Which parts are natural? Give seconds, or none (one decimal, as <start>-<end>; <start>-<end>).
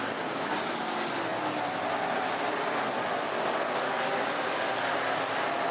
0.0-5.7